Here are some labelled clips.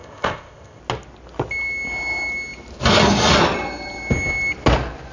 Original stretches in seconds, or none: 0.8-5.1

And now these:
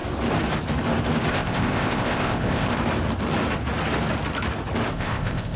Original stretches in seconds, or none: 0.0-1.3; 2.8-4.9

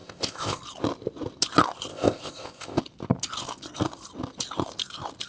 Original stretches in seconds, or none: 0.6-1.9; 2.8-5.3

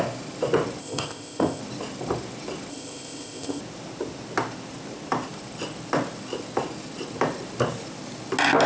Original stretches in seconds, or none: 0.0-0.8; 1.6-2.7; 3.6-8.7

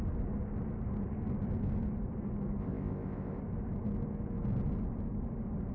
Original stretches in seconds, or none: 0.0-2.6; 3.4-5.7

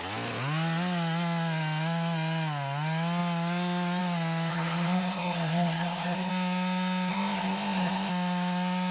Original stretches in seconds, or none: 0.0-4.5; 6.3-7.1; 8.1-8.9

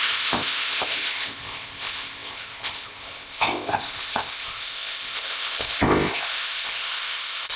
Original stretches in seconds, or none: none